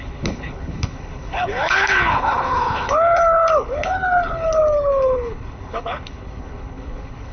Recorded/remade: remade